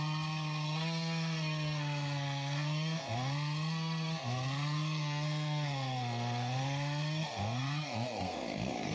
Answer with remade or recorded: remade